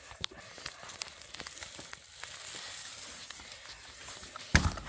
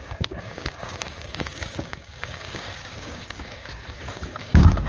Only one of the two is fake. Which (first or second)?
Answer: second